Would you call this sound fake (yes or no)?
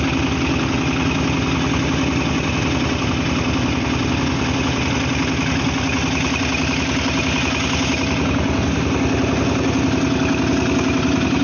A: no